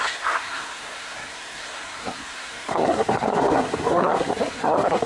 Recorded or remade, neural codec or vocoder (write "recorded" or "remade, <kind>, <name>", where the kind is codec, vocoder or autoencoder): remade, codec, SNAC